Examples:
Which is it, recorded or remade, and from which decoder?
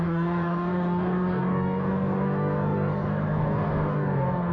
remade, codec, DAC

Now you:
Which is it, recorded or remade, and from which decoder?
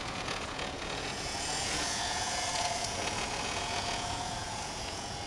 remade, vocoder, Vocos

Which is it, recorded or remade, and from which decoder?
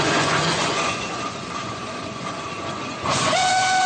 remade, vocoder, Vocos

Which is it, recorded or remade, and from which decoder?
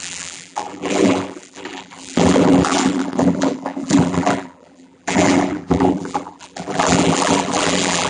remade, vocoder, BigVGAN v2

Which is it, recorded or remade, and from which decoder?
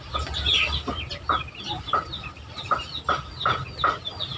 recorded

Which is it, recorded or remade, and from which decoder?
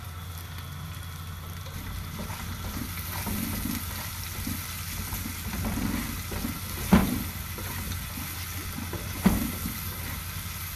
recorded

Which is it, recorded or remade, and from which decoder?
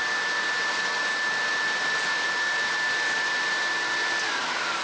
recorded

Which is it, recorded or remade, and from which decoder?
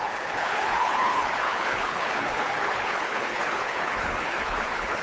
remade, codec, HILCodec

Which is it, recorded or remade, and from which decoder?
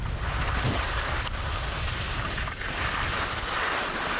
recorded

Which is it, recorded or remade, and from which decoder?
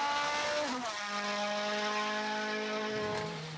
recorded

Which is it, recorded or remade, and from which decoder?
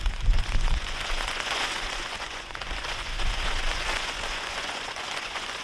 remade, vocoder, Vocos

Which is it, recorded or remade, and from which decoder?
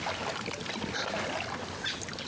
recorded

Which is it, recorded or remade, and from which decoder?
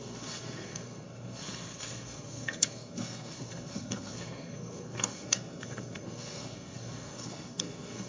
remade, codec, SNAC